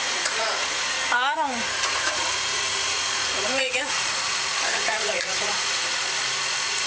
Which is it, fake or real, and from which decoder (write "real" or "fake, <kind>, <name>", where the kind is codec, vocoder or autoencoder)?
fake, vocoder, Vocos